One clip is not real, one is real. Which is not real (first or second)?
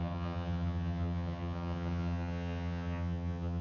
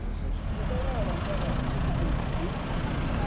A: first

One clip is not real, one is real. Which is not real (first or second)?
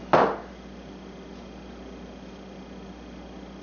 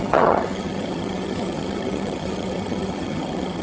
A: second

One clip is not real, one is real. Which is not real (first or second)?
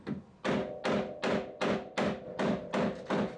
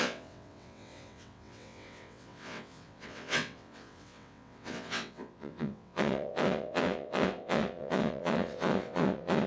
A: second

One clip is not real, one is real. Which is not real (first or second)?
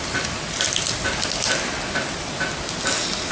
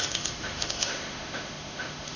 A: second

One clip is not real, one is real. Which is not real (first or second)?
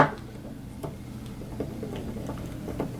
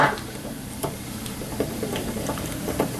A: second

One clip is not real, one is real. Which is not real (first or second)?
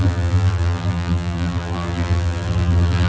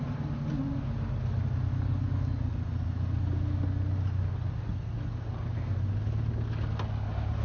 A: first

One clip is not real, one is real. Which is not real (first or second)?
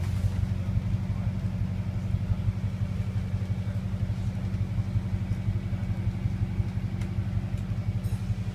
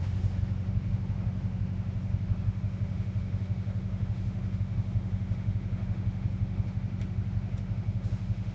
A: second